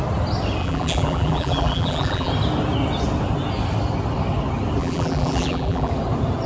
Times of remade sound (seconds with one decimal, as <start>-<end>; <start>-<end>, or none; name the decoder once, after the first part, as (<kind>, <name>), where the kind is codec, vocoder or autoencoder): 0.6-2.3 (vocoder, BigVGAN v2); 4.8-5.9